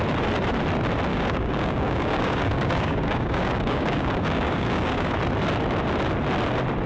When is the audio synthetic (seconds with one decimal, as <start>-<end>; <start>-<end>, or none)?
1.1-5.2